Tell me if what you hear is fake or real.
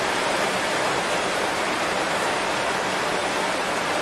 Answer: fake